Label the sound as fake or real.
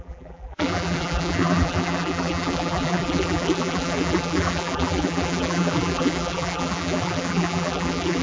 fake